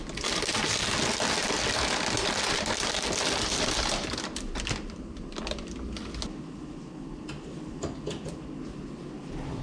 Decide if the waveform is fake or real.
real